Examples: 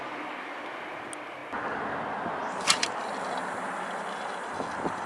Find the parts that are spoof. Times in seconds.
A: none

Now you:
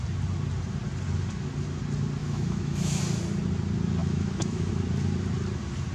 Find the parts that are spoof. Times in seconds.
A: 2.2-3.0; 4.0-4.7